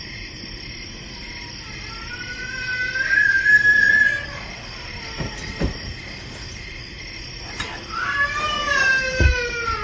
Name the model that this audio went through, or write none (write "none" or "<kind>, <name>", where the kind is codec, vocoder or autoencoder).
none